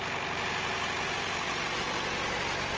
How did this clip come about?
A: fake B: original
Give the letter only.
B